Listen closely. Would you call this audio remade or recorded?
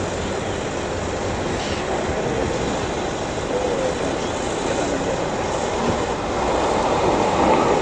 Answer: recorded